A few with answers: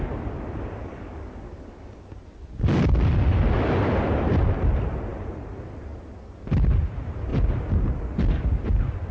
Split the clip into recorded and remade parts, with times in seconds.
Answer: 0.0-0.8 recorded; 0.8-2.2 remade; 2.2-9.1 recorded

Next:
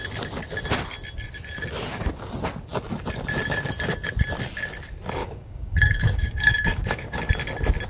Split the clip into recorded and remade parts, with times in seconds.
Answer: 0.0-5.2 recorded; 5.2-7.3 remade; 7.3-7.9 recorded

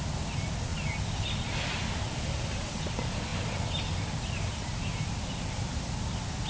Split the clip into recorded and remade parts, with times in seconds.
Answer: 0.0-6.5 recorded